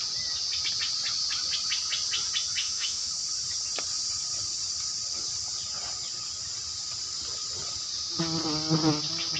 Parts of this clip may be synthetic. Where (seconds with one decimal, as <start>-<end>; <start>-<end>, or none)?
2.6-3.1